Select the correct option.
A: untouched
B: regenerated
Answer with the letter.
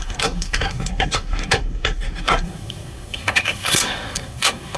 B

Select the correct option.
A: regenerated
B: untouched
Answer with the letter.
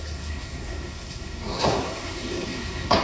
A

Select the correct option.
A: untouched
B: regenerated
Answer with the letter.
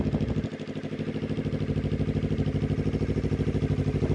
A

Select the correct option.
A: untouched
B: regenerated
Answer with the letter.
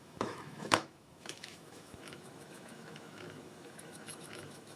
B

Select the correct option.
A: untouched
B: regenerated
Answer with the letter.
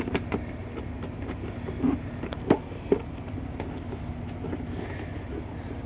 A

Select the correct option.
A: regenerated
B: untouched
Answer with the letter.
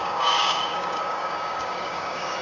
A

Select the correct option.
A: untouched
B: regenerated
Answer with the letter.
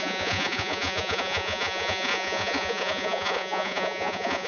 B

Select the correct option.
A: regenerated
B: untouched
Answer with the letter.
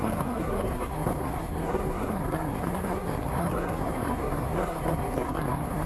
A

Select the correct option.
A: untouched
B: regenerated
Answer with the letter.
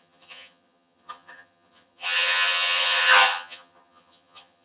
B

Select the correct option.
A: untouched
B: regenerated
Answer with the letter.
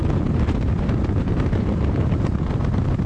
B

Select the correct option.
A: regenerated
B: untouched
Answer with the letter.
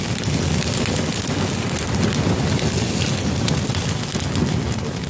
B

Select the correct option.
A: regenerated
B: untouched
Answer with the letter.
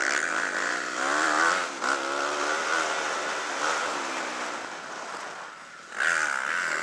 B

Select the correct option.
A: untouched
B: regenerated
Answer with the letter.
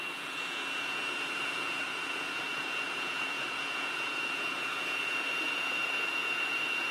B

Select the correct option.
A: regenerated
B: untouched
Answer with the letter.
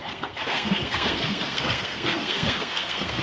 A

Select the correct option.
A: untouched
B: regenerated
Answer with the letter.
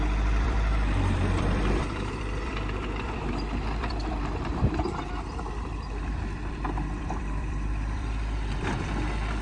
B